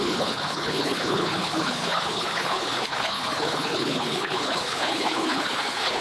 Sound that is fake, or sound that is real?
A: fake